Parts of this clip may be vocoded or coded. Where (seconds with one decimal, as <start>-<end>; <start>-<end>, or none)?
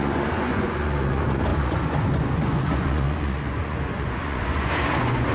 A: 0.0-5.3